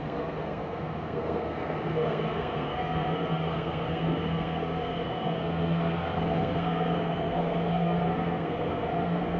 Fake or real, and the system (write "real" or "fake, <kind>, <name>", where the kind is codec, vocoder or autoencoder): fake, codec, SNAC